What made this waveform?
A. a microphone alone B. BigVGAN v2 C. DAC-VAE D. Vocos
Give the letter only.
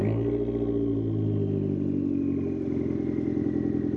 A